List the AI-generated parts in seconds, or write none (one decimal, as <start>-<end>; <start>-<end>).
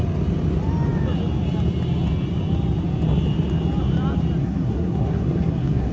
4.4-5.9